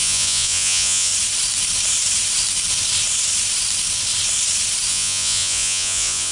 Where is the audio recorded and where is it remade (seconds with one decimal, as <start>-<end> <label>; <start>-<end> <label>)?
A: 0.0-1.1 remade; 1.1-4.9 recorded; 4.9-6.3 remade